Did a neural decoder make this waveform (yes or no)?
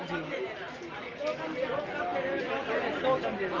no